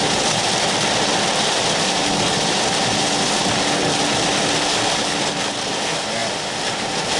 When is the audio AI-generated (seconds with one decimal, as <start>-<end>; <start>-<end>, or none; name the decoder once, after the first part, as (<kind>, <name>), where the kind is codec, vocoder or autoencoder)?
none